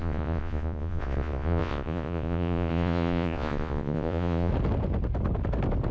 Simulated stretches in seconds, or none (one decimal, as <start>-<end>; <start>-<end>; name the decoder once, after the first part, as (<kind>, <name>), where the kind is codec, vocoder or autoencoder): 0.0-4.5 (vocoder, Vocos)